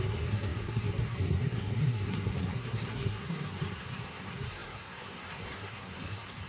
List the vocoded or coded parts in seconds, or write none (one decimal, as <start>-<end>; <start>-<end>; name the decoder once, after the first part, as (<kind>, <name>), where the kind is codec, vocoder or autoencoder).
0.0-6.5 (codec, SNAC)